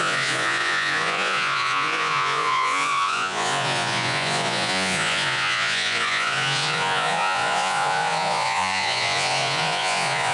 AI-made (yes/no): yes